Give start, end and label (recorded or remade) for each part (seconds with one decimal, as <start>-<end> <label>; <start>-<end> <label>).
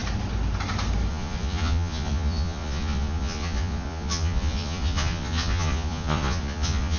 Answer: 0.0-1.1 recorded; 1.1-7.0 remade